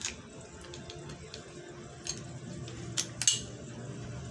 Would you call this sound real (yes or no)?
yes